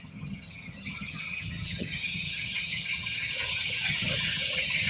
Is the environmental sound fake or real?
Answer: fake